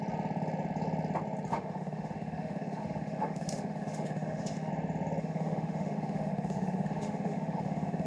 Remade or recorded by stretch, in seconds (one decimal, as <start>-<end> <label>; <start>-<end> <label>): 0.0-1.5 recorded; 1.5-4.7 remade; 4.7-5.2 recorded; 5.2-8.1 remade